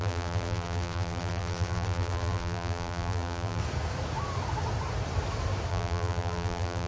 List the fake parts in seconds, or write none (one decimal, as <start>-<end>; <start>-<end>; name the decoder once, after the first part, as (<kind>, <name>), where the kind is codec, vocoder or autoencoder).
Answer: 0.0-3.6 (vocoder, BigVGAN v2); 5.7-6.9